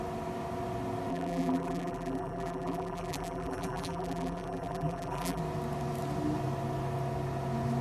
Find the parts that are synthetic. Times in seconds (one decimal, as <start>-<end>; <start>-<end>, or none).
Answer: 1.1-5.4